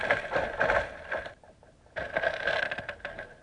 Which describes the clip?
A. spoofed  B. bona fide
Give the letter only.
B